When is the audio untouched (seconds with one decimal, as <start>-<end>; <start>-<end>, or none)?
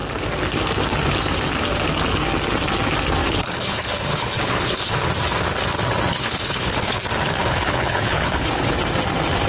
0.0-3.2; 4.8-6.1; 7.0-7.4; 8.7-9.5